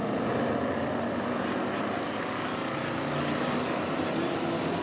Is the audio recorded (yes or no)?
yes